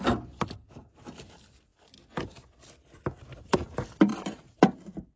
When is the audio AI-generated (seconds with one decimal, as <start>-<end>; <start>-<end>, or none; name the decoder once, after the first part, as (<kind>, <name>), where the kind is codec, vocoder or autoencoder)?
4.1-5.2 (vocoder, BigVGAN v2)